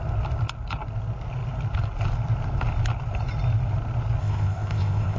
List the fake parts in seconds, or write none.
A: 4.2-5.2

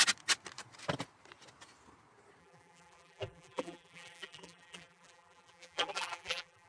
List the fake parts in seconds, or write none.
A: 2.4-6.7

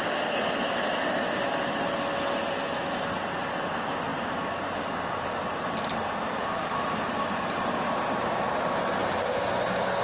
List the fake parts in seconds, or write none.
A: 4.1-5.3; 9.0-9.5

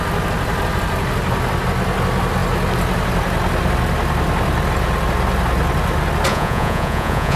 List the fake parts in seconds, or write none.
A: 6.3-7.4

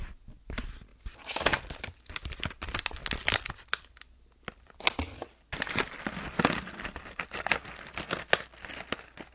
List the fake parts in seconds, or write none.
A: 0.9-1.8; 3.0-3.5

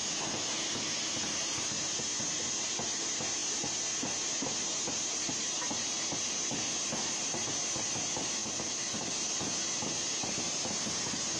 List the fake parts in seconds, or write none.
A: 8.4-9.1

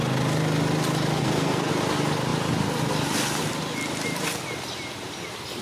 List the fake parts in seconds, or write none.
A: 1.2-1.7

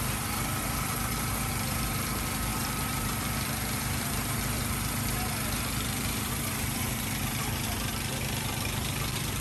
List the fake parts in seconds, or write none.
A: 0.0-9.4